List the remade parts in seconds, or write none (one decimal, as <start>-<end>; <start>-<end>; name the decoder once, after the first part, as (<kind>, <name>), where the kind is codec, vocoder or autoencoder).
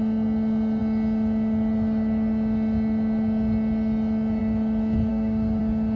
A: 5.1-5.6 (autoencoder, DAC-VAE)